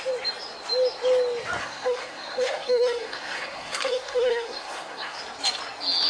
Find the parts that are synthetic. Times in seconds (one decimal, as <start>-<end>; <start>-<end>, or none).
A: 1.6-5.2